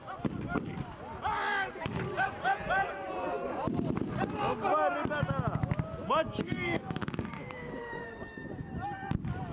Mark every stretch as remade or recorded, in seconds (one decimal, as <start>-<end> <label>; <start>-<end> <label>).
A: 0.0-6.0 recorded; 6.0-8.1 remade; 8.1-9.5 recorded